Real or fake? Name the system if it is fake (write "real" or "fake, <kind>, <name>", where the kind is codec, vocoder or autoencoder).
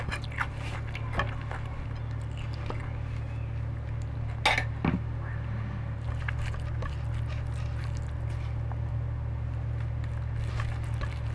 real